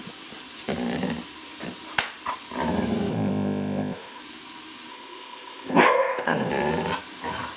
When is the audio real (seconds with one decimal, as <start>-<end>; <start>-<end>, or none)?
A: 0.0-3.1; 4.2-4.9; 6.5-7.6